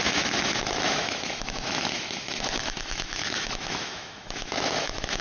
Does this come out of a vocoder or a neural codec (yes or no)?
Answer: yes